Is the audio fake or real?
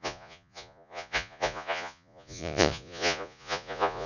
fake